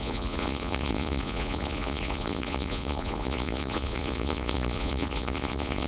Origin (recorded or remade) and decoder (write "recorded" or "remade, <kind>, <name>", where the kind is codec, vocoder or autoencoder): remade, vocoder, Vocos